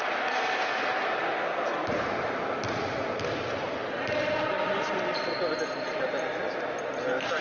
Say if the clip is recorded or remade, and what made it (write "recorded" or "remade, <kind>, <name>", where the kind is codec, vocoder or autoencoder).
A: recorded